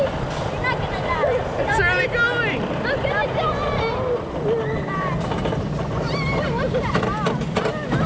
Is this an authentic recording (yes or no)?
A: yes